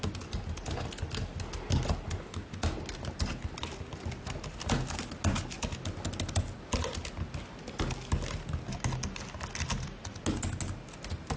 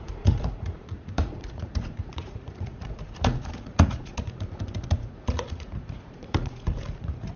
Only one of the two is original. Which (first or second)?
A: first